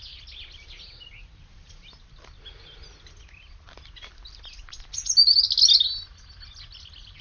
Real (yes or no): yes